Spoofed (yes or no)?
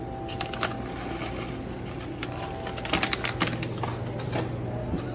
no